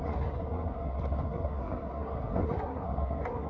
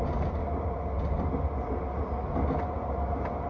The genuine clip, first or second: second